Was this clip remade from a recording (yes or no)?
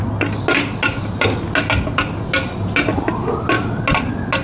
no